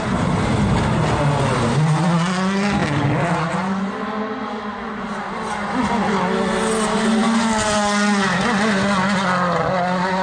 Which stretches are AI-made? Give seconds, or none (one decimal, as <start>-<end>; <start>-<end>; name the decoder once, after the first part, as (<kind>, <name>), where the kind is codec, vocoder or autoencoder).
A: none